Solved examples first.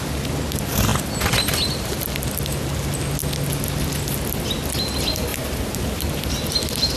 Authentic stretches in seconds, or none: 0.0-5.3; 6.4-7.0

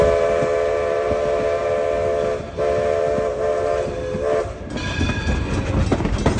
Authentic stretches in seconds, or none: 0.0-6.4

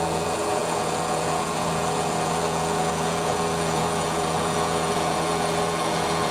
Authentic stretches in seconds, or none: none

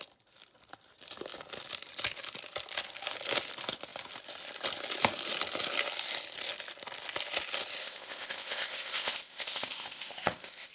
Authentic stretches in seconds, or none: 0.0-7.8

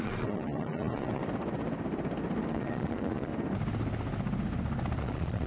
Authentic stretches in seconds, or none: 1.2-2.5; 3.3-5.0